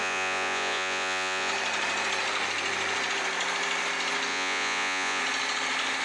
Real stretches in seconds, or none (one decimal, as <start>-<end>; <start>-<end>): 1.5-4.3; 5.2-6.0